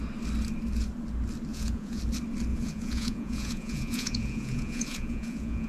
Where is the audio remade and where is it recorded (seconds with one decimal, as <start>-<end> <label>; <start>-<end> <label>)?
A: 0.0-1.5 recorded; 1.5-2.0 remade; 2.0-2.5 recorded; 2.5-5.7 remade